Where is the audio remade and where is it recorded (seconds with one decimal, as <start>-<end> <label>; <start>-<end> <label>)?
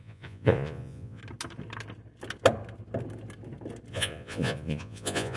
0.0-1.2 remade; 1.2-3.9 recorded; 3.9-5.4 remade